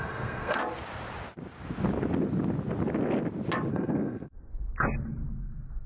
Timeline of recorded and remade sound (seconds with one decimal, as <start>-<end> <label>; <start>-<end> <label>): 0.0-0.6 remade; 0.6-3.7 recorded; 3.7-4.5 remade; 4.5-5.9 recorded